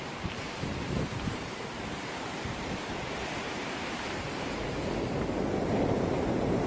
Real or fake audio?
fake